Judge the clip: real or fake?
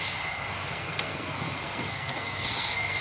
fake